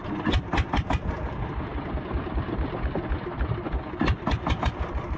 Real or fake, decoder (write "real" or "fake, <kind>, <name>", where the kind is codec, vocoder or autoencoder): real